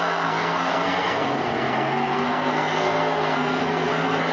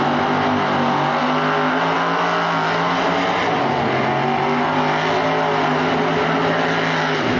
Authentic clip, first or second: second